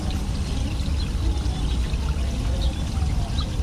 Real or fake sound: real